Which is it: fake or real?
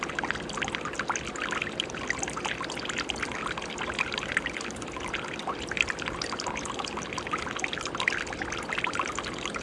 real